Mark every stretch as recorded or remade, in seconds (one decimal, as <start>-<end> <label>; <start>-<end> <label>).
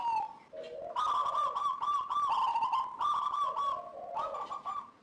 0.0-1.2 recorded; 1.2-2.1 remade; 2.1-5.0 recorded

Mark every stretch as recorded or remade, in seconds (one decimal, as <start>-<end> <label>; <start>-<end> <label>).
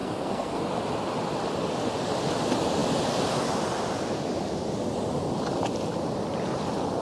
0.0-0.6 remade; 0.6-7.0 recorded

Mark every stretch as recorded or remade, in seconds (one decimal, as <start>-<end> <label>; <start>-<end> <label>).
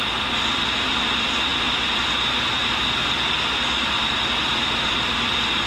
0.0-5.7 recorded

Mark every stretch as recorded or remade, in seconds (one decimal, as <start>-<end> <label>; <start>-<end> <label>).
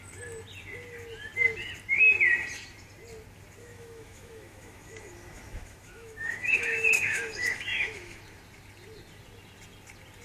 0.0-3.6 recorded; 3.6-8.2 remade; 8.2-10.2 recorded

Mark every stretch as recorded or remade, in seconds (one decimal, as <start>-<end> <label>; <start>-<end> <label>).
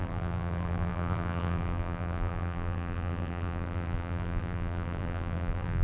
0.0-5.8 remade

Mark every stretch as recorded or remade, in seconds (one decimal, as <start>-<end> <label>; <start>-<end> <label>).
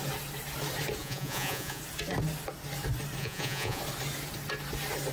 0.0-1.0 recorded; 1.0-1.8 remade; 1.8-3.2 recorded; 3.2-3.8 remade; 3.8-5.1 recorded